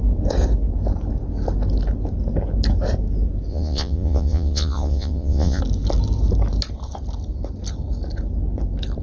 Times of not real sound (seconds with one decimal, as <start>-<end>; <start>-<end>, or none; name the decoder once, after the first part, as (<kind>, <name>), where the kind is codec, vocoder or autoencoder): 3.5-5.6 (vocoder, Vocos)